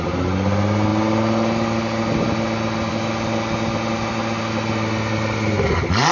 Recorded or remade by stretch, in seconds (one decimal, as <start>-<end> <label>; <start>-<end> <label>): 0.0-6.1 recorded